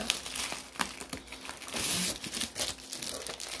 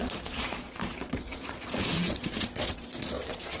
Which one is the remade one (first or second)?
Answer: second